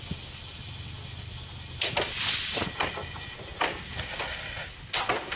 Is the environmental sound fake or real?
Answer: real